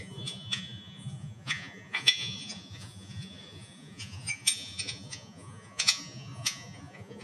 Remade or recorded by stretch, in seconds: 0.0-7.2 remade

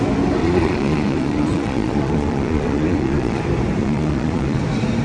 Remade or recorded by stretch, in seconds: 0.0-0.4 recorded; 0.4-3.4 remade; 3.4-3.8 recorded; 3.8-4.6 remade; 4.6-5.0 recorded

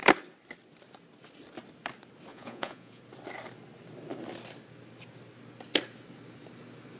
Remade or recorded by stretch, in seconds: 0.0-2.3 recorded; 2.3-3.0 remade; 3.0-7.0 recorded

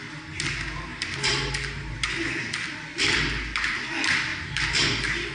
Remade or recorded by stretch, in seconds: 0.0-5.3 recorded

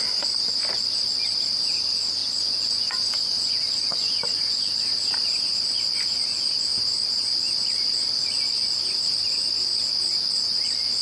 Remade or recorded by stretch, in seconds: 0.0-2.2 recorded; 2.2-4.7 remade; 4.7-11.0 recorded

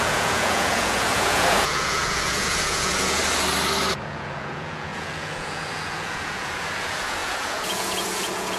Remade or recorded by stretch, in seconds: 0.0-3.2 remade; 3.2-4.0 recorded; 4.0-8.6 remade